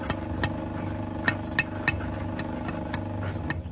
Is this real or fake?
real